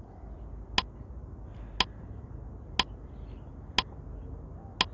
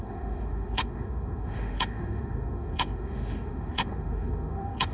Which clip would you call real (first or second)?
first